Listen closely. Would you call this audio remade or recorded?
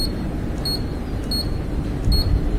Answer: recorded